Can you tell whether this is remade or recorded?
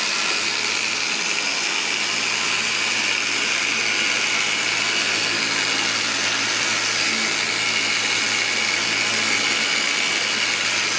recorded